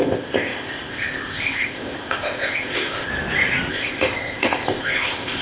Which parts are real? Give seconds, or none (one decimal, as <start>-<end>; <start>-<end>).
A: 3.1-3.7